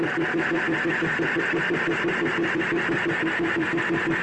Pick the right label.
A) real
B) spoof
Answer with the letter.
B